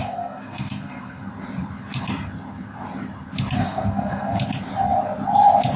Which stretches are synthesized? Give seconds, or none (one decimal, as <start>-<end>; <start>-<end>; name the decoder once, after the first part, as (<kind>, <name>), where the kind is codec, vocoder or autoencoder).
0.0-1.3 (codec, SNAC); 3.6-4.4